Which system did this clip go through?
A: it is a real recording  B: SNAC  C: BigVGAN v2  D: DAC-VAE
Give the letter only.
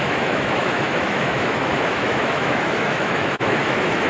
D